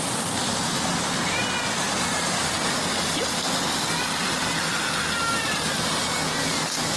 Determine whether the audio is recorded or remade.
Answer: recorded